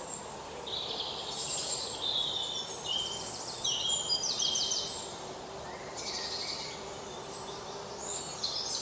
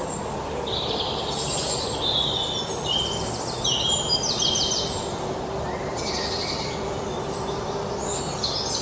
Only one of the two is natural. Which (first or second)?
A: second